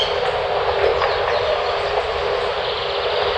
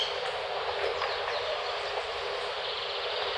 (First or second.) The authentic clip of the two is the first